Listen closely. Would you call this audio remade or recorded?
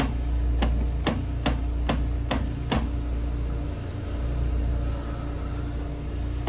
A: recorded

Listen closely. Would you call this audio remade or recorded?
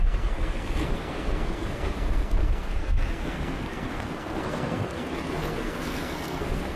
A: remade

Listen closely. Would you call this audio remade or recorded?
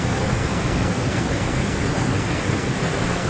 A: remade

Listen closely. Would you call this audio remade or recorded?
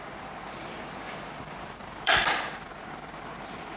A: remade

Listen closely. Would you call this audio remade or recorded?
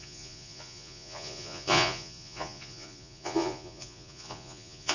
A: remade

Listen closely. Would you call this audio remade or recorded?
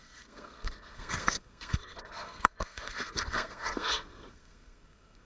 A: remade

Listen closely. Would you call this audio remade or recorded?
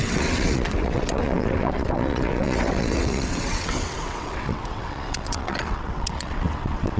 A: remade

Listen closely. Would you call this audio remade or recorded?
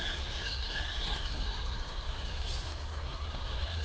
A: remade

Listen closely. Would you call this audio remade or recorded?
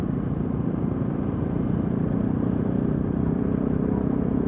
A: remade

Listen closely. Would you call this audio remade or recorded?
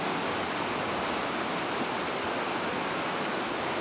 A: recorded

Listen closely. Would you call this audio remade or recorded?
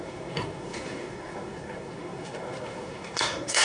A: remade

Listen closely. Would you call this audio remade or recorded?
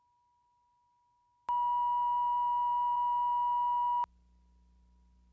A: recorded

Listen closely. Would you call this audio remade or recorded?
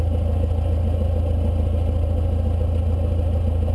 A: recorded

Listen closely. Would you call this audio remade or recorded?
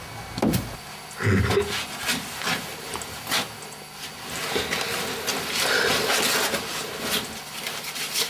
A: recorded